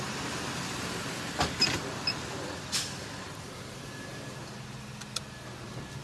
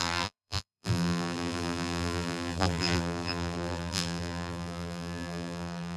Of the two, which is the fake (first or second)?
second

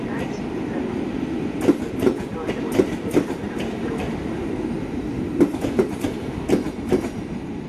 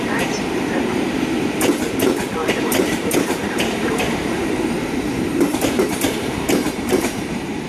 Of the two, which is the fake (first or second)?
second